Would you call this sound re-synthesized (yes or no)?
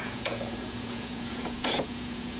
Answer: yes